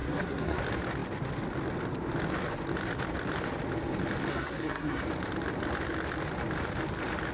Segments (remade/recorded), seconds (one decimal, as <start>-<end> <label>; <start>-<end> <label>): 0.0-0.6 remade; 0.6-4.3 recorded; 4.3-5.0 remade; 5.0-7.3 recorded